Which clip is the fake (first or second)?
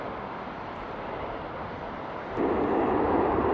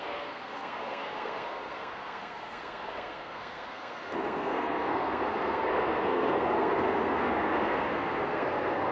second